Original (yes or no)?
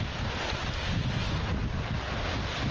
yes